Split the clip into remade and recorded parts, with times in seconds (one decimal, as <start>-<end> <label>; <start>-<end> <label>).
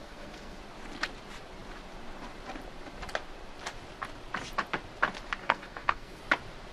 0.0-0.6 remade; 0.6-5.4 recorded; 5.4-6.2 remade; 6.2-6.7 recorded